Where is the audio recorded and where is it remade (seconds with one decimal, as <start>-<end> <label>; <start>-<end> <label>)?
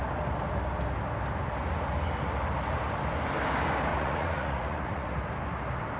0.0-3.9 recorded; 3.9-5.1 remade; 5.1-6.0 recorded